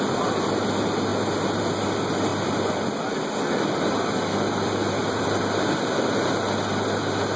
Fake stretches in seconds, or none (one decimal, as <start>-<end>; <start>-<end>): 2.3-3.4; 5.0-6.1